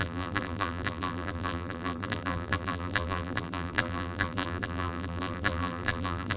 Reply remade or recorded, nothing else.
remade